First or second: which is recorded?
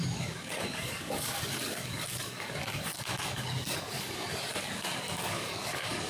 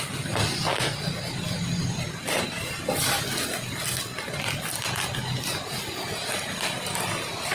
second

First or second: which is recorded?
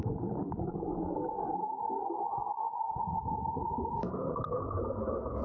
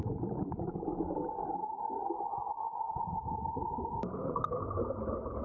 second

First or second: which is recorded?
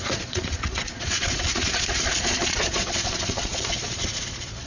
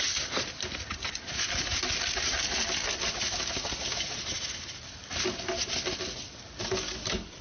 second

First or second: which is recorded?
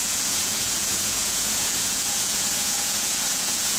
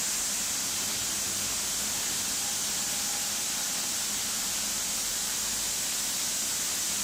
second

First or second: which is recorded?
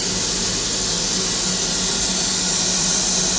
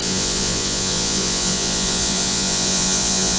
first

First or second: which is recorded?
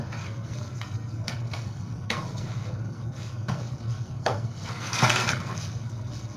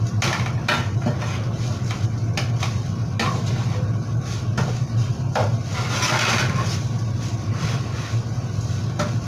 second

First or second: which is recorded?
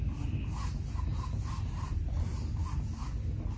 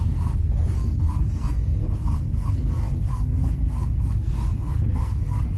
first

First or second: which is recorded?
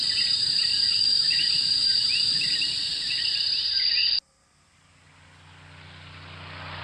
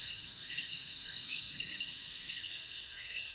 first